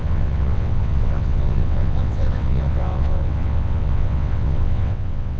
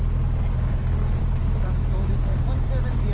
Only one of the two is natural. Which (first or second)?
second